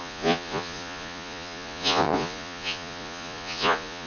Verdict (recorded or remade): remade